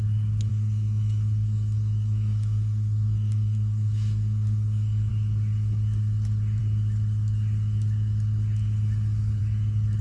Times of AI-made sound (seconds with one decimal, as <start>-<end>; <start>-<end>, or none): 0.5-5.1